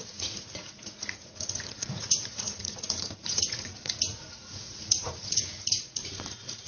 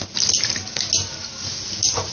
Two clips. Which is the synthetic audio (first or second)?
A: first